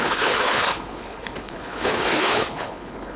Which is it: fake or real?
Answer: fake